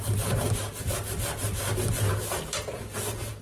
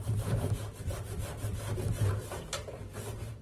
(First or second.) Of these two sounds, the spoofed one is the second